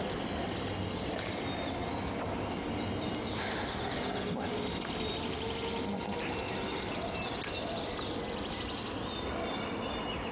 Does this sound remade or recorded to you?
recorded